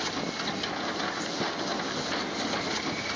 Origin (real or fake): real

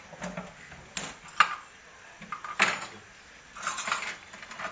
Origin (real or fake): real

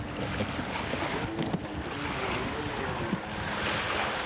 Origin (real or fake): real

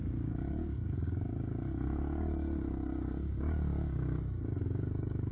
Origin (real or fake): fake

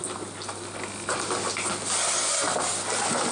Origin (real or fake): real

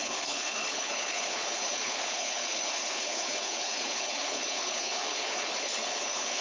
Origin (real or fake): fake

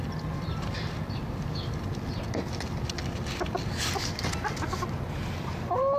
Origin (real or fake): real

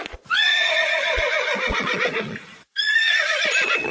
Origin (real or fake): fake